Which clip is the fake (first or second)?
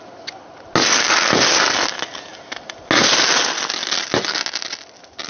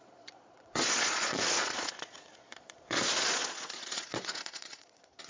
second